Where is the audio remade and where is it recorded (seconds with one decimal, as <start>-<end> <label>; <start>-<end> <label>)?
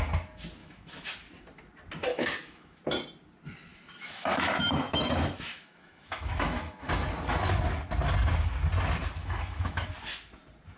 0.0-0.6 recorded; 0.6-1.1 remade; 1.1-2.1 recorded; 2.1-2.8 remade; 2.8-3.7 recorded; 3.7-6.9 remade; 6.9-9.2 recorded; 9.2-9.9 remade; 9.9-10.8 recorded